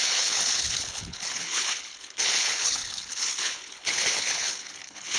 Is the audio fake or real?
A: fake